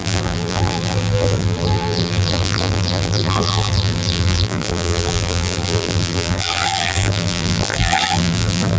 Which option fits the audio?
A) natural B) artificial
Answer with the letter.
B